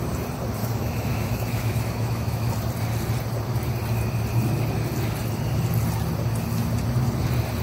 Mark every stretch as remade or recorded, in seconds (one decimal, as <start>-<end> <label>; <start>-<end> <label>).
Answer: 0.0-0.6 recorded; 0.6-2.5 remade; 2.5-7.6 recorded